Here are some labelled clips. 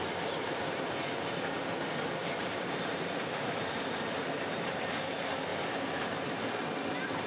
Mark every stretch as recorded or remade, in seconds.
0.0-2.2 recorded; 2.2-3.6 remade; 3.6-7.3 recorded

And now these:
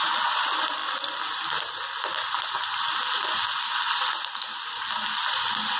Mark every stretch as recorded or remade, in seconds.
0.0-5.8 recorded

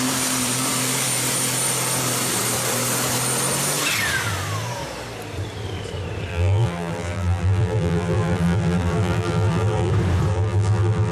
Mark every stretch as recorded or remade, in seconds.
0.0-6.3 recorded; 6.3-9.9 remade; 9.9-10.3 recorded; 10.3-11.1 remade

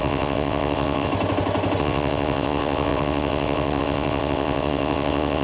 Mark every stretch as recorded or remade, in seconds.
0.0-1.1 remade; 1.1-1.8 recorded; 1.8-5.4 remade